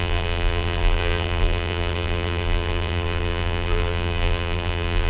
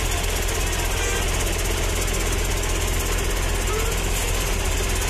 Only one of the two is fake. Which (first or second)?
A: first